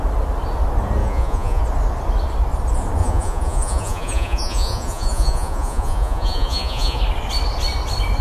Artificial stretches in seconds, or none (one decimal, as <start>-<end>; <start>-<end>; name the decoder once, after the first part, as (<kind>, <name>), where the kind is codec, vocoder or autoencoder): 1.0-1.6 (vocoder, Vocos); 3.0-7.0

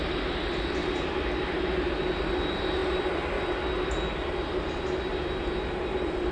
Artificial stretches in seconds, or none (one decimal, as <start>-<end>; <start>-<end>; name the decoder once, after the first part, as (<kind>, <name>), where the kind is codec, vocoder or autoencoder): none